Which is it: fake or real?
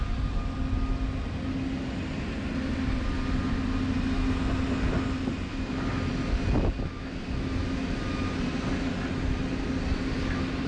real